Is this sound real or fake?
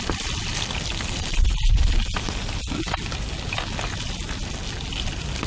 real